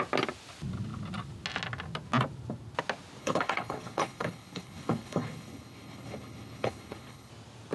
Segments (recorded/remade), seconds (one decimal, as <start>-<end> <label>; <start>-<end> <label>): 0.0-3.2 recorded; 3.2-7.3 remade; 7.3-7.7 recorded